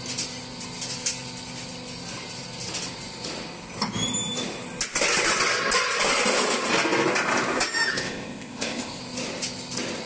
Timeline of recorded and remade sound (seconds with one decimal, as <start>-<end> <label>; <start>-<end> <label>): 0.0-7.9 recorded; 7.9-9.0 remade; 9.0-10.1 recorded